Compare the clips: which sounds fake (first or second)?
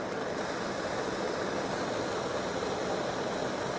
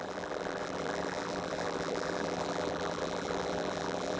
second